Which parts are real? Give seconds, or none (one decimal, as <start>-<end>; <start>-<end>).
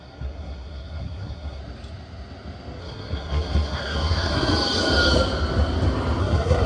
1.6-2.8; 4.5-6.2